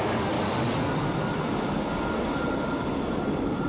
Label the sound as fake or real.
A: real